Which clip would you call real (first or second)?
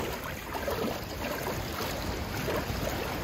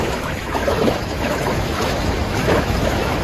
first